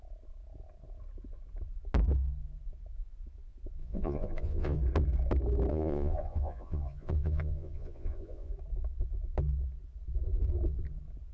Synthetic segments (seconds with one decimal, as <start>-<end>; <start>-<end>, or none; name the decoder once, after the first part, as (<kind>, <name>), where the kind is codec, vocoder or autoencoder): 3.8-4.8 (vocoder, Vocos); 5.7-8.5

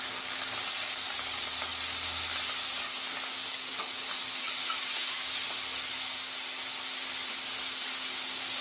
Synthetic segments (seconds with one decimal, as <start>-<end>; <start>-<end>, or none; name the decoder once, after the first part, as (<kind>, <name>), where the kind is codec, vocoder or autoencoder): none

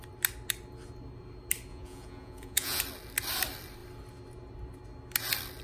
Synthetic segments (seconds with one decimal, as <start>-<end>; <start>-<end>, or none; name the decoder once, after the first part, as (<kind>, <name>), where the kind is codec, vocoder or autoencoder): 1.7-2.8 (vocoder, Vocos)

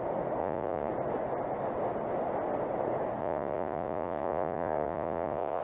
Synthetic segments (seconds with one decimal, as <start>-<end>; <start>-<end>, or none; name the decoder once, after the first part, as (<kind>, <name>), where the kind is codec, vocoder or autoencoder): 0.4-0.9 (vocoder, Vocos); 3.2-5.6